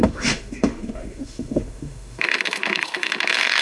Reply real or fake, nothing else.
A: fake